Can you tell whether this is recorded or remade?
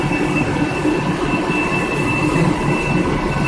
recorded